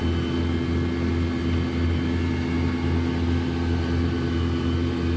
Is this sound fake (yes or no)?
no